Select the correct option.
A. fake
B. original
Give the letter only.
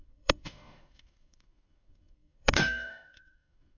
A